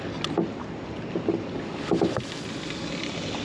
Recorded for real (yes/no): yes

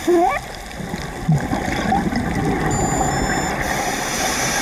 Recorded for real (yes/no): yes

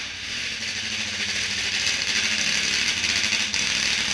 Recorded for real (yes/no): yes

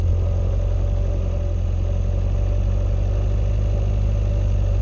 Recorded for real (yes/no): yes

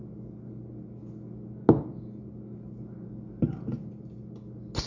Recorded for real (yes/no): yes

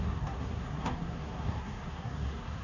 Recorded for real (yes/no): no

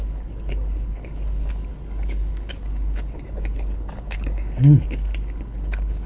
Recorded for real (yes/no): no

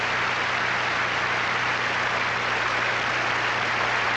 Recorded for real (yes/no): yes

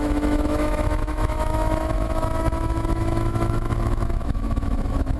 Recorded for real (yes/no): no